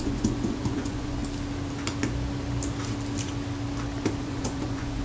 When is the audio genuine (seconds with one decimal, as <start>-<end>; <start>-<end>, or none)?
1.2-4.2